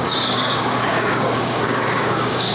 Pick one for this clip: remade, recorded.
remade